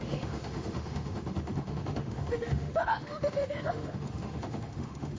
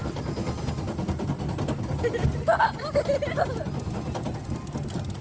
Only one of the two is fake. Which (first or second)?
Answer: first